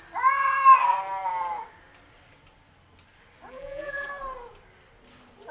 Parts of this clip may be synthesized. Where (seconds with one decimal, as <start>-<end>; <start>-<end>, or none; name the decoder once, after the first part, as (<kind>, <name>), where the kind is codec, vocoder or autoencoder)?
3.5-4.1 (vocoder, BigVGAN v2)